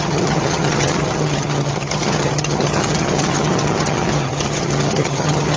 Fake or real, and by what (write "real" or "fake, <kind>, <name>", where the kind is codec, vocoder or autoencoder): fake, vocoder, HiFi-GAN